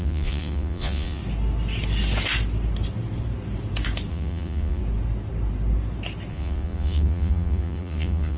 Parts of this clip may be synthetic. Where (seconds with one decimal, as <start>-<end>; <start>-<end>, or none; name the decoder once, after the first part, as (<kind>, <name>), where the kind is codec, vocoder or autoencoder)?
0.0-1.2 (vocoder, Vocos); 4.1-4.8; 6.3-8.4